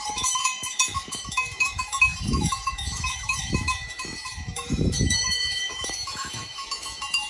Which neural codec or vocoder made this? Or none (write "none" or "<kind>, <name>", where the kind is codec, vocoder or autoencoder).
autoencoder, DAC-VAE